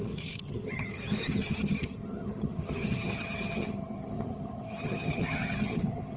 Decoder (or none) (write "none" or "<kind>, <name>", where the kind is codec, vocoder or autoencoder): vocoder, HiFi-GAN